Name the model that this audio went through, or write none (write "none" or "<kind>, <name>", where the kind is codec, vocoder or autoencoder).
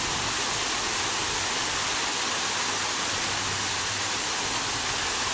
none